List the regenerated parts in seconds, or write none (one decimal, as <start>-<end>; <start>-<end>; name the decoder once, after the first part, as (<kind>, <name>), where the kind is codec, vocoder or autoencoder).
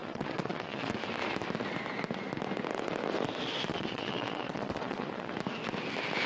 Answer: 0.0-0.9 (vocoder, Vocos); 3.7-5.3